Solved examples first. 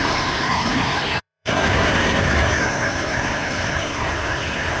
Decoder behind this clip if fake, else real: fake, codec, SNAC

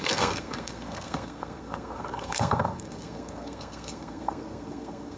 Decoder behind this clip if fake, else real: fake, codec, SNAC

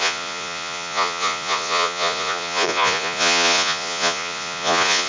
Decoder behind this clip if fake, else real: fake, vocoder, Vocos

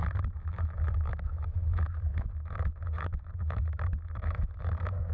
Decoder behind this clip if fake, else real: fake, autoencoder, DAC-VAE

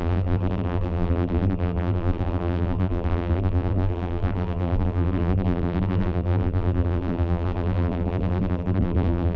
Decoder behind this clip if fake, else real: fake, vocoder, BigVGAN v2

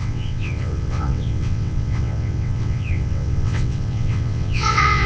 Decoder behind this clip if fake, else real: fake, vocoder, WaveNeXt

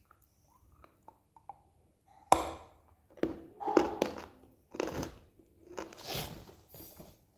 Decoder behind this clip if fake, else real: real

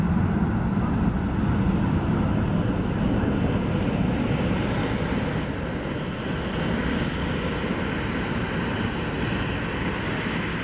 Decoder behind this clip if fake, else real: real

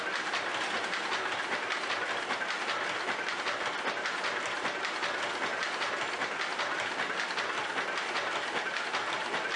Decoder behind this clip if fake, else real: real